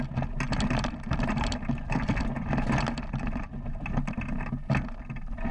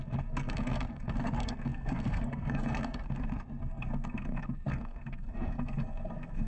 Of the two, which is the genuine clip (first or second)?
first